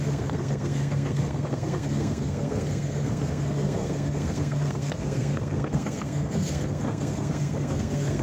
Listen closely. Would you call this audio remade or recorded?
remade